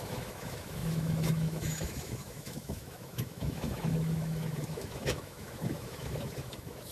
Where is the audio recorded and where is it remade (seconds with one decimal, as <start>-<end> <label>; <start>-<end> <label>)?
0.0-6.9 remade